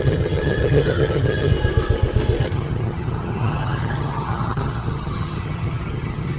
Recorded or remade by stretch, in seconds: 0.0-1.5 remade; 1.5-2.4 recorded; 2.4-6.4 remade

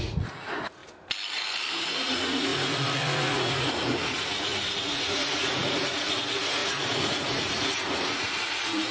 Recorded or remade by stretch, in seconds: 0.0-0.8 remade; 0.8-1.7 recorded; 1.7-8.9 remade

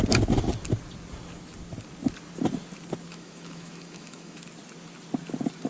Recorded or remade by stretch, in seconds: 0.0-3.1 recorded; 3.1-4.4 remade; 4.4-5.7 recorded

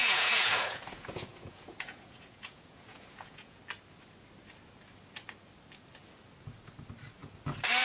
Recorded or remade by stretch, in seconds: 0.0-3.6 remade; 3.6-7.8 recorded

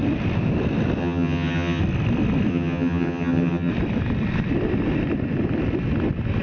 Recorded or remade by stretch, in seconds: 0.0-1.0 recorded; 1.0-1.8 remade; 1.8-2.5 recorded; 2.5-3.7 remade; 3.7-6.4 recorded

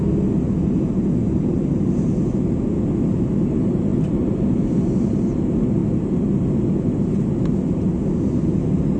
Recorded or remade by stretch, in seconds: 0.0-9.0 recorded